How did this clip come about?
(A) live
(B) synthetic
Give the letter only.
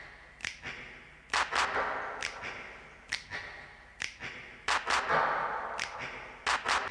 A